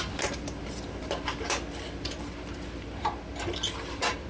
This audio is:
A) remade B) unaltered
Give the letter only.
B